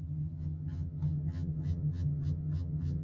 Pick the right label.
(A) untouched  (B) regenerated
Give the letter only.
B